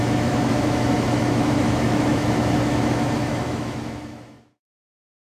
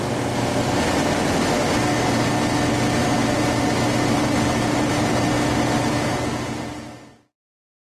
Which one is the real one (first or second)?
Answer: second